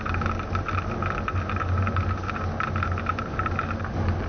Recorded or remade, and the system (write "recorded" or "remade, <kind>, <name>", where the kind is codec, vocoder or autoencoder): recorded